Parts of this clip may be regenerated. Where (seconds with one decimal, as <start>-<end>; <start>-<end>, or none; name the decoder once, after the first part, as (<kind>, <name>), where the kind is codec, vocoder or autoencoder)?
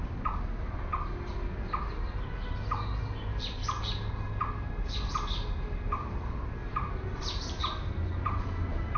none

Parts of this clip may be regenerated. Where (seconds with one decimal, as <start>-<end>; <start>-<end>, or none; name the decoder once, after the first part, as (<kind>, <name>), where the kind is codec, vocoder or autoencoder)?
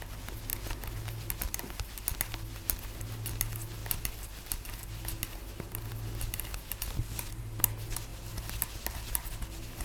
none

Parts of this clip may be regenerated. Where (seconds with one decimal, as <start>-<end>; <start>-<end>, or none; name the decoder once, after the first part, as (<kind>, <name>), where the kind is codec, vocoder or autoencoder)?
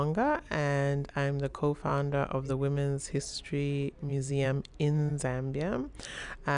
4.1-5.1 (vocoder, BigVGAN v2)